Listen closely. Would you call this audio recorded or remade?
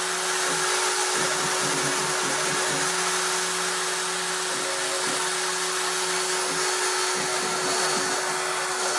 recorded